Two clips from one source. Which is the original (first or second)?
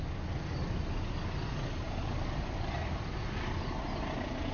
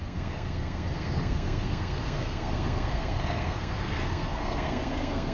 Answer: first